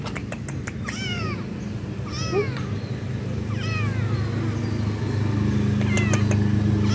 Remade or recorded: recorded